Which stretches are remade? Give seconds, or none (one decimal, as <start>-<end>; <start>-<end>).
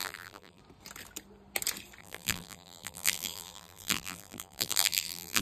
0.0-0.6; 2.0-5.4